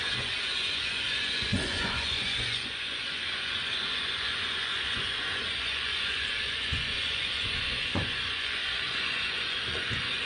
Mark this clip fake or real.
fake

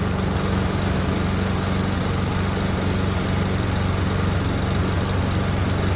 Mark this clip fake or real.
real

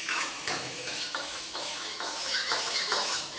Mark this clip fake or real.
fake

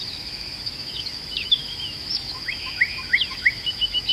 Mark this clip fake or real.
fake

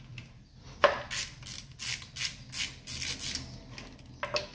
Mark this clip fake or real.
real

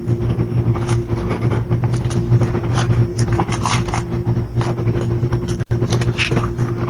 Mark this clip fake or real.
real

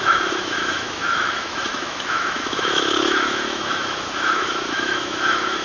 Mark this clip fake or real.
fake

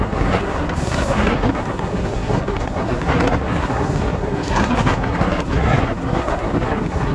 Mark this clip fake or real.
fake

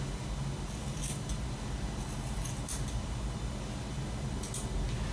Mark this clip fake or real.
real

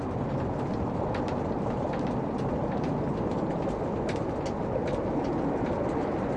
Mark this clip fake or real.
real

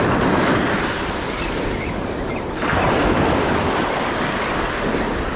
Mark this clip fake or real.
real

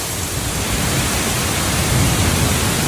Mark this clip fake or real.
real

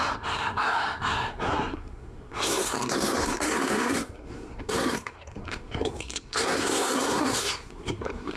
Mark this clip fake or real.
fake